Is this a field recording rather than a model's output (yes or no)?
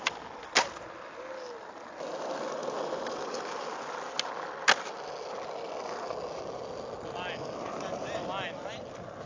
yes